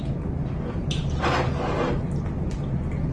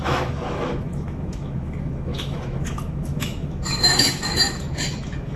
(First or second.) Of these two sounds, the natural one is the first